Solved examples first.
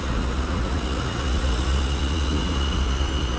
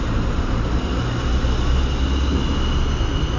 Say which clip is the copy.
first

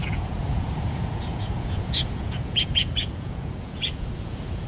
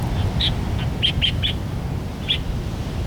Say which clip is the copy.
first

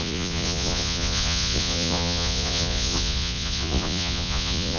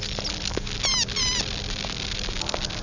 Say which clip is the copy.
first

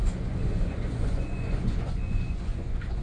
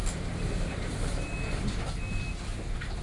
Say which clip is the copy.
first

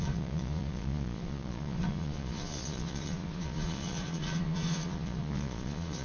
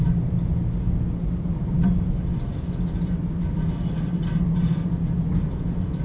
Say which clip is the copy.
first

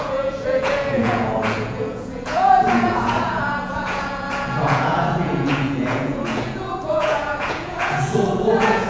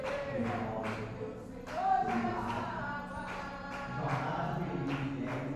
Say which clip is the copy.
first